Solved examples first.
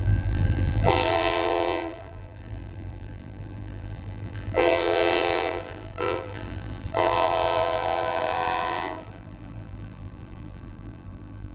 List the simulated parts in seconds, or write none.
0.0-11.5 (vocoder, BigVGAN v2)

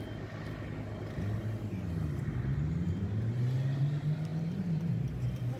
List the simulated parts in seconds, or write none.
none

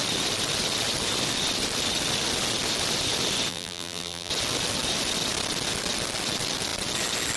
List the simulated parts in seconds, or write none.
3.5-4.3 (vocoder, BigVGAN v2)

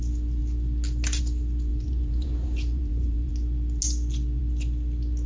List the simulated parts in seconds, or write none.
1.7-3.3 (vocoder, BigVGAN v2)

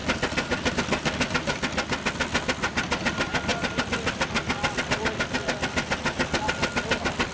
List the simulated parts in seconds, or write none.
none

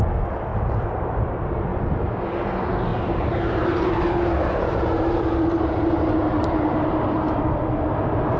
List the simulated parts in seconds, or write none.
0.5-1.2 (vocoder, BigVGAN v2); 1.7-2.2; 2.9-7.4

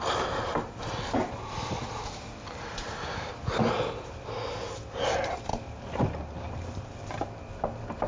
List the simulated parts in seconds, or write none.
5.5-8.1 (vocoder, BigVGAN v2)

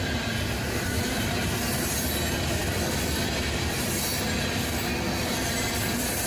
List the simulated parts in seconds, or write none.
0.0-1.4 (vocoder, BigVGAN v2); 5.2-6.3